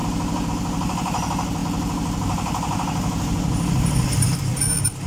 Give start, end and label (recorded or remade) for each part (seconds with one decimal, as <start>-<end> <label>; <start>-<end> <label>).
0.0-5.1 recorded